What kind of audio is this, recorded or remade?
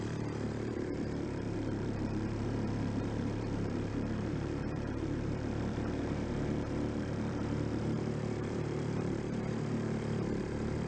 remade